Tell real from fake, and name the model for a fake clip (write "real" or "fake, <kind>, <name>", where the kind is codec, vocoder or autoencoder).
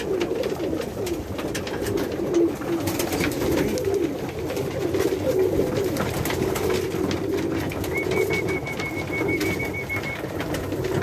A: real